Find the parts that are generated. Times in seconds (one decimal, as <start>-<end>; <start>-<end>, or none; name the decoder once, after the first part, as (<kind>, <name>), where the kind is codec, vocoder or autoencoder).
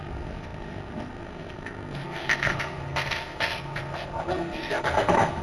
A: 0.0-5.4 (codec, SNAC)